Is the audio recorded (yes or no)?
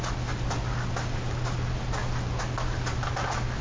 yes